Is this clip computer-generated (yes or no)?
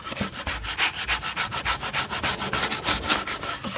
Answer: no